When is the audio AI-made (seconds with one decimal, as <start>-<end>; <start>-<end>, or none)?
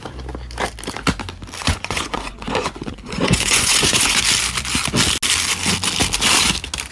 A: 1.6-4.2